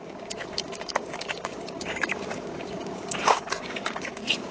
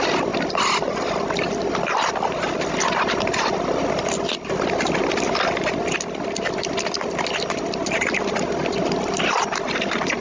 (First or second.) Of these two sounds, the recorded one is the second